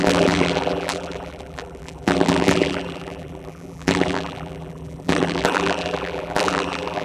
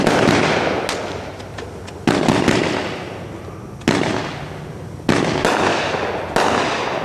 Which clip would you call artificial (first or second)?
first